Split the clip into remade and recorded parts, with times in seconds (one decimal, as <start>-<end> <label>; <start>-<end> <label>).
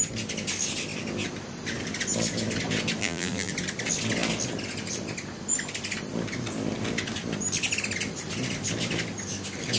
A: 0.0-3.0 recorded; 3.0-3.5 remade; 3.5-9.8 recorded